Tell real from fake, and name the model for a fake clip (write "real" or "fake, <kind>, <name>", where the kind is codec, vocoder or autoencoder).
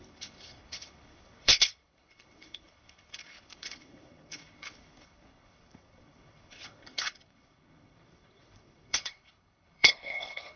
fake, codec, HILCodec